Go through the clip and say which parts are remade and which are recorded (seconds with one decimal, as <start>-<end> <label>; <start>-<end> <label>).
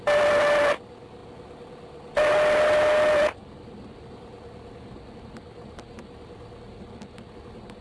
0.0-7.8 recorded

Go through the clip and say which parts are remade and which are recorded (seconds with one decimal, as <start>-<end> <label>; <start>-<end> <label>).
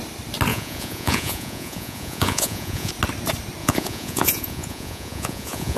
0.0-0.5 recorded; 0.5-2.9 remade; 2.9-3.6 recorded; 3.6-5.8 remade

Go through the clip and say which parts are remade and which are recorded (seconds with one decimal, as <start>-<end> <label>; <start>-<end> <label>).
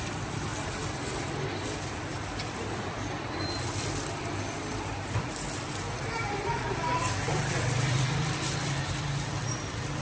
0.0-0.5 remade; 0.5-1.8 recorded; 1.8-10.0 remade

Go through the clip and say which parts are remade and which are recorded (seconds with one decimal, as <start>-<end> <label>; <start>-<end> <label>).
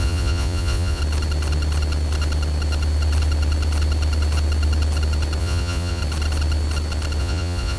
0.0-1.0 remade; 1.0-5.4 recorded; 5.4-6.0 remade; 6.0-7.2 recorded; 7.2-7.8 remade